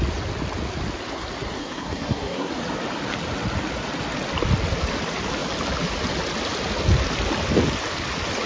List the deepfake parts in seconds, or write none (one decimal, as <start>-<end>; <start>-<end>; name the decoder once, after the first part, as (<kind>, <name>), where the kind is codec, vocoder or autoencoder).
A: 1.6-2.5 (codec, SNAC)